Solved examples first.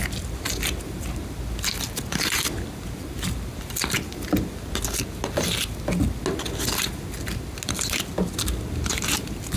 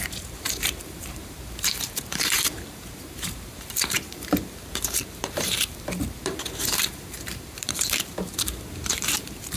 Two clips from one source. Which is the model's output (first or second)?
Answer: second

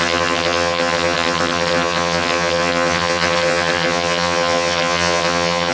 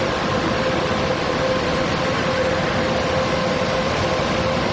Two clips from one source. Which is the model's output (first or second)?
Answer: first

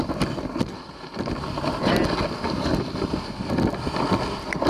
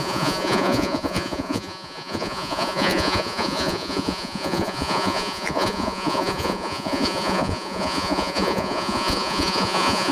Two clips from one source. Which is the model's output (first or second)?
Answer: second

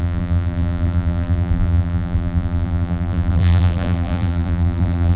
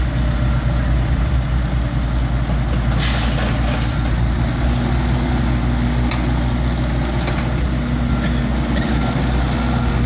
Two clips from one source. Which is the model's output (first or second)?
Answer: first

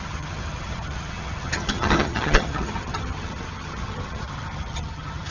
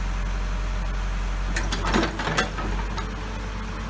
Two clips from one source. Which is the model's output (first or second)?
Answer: first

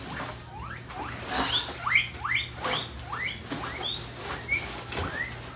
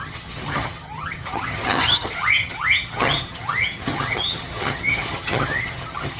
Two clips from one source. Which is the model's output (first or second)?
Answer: second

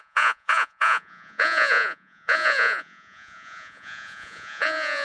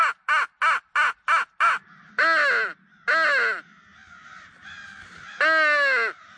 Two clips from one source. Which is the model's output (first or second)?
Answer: first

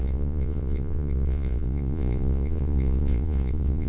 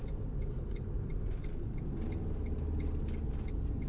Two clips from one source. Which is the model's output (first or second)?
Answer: first